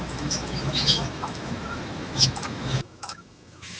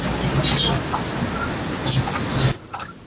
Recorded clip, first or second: second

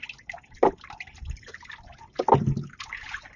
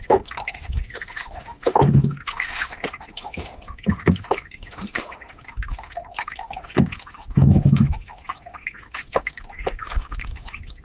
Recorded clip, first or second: first